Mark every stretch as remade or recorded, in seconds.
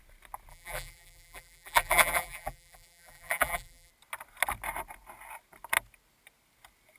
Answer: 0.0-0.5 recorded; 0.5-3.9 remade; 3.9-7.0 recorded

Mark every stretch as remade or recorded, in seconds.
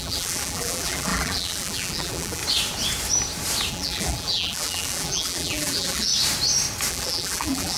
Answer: 0.0-2.4 remade; 2.4-3.7 recorded; 3.7-6.1 remade; 6.1-6.9 recorded; 6.9-7.8 remade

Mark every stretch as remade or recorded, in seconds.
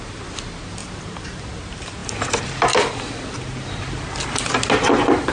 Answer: 0.0-0.8 recorded; 0.8-1.4 remade; 1.4-5.3 recorded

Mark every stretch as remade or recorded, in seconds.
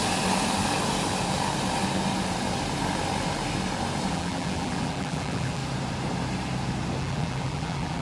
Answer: 0.0-4.1 recorded; 4.1-5.6 remade; 5.6-7.0 recorded; 7.0-8.0 remade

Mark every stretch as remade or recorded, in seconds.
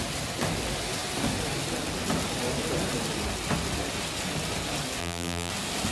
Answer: 0.0-5.0 recorded; 5.0-5.5 remade; 5.5-5.9 recorded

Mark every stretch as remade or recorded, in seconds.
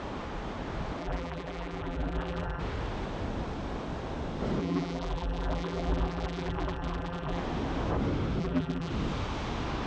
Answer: 0.0-1.0 recorded; 1.0-2.6 remade; 2.6-4.6 recorded; 4.6-7.4 remade; 7.4-8.4 recorded; 8.4-8.9 remade; 8.9-9.9 recorded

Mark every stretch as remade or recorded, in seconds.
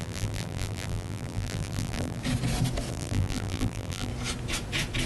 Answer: 0.0-2.2 remade; 2.2-2.9 recorded; 2.9-4.1 remade; 4.1-5.1 recorded